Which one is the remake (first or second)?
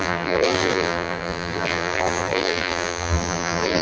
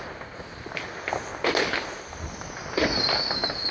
first